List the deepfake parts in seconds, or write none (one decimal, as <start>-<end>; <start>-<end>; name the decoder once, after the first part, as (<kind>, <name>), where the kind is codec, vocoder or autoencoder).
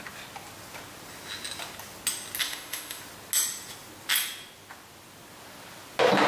2.4-3.0 (autoencoder, DAC-VAE)